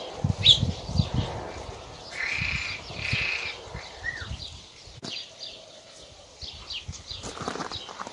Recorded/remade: recorded